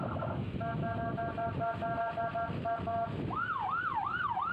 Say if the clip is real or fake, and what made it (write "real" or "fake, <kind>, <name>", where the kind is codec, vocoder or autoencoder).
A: real